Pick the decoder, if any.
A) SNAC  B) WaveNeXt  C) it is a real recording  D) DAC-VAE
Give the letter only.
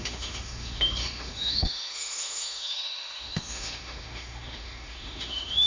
D